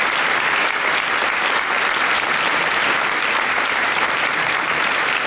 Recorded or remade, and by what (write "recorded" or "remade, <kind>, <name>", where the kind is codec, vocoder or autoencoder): recorded